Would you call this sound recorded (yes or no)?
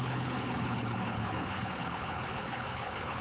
no